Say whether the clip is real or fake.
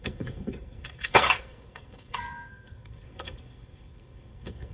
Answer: fake